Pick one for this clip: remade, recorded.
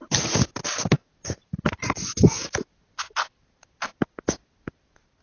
recorded